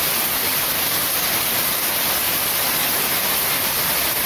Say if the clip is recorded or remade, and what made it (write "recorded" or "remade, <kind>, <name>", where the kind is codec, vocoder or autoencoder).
recorded